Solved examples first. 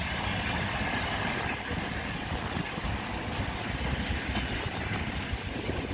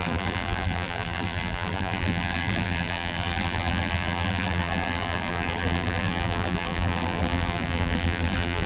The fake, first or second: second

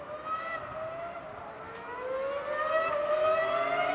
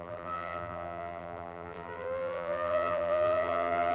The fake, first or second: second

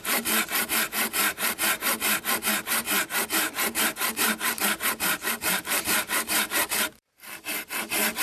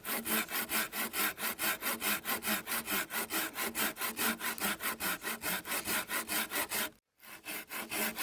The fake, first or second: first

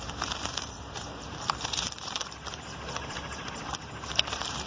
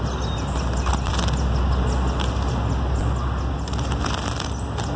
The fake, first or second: first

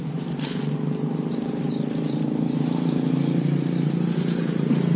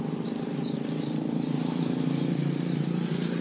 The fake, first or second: second